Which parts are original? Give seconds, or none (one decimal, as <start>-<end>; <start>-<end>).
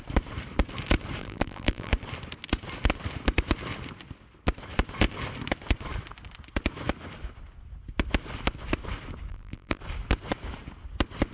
0.0-1.2; 1.9-9.3; 9.8-11.3